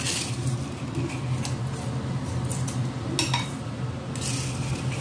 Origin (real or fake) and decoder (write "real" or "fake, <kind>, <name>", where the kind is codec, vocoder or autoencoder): real